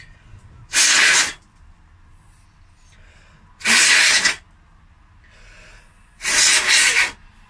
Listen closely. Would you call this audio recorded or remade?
recorded